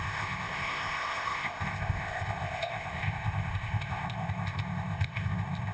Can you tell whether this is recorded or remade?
remade